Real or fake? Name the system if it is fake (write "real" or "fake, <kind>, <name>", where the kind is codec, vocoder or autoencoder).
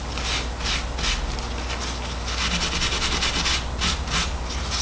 real